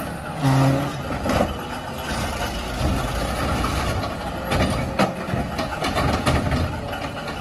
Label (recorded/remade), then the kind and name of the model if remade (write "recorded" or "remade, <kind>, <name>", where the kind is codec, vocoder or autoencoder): recorded